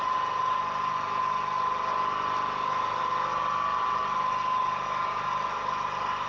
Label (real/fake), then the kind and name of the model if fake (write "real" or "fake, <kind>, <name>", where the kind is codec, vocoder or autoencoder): real